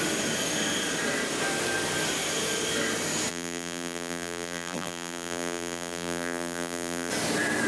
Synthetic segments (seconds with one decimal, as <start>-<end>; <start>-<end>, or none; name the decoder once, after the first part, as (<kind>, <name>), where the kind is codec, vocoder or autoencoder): 3.3-7.1 (vocoder, BigVGAN v2)